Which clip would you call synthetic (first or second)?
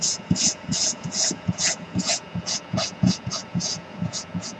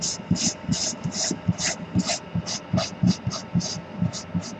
first